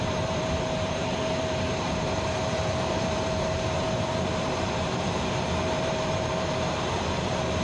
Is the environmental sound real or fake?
fake